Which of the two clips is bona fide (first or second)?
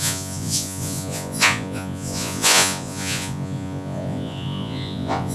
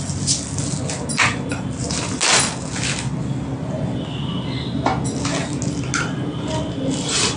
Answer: second